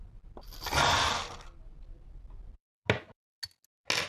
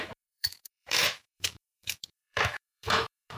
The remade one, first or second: second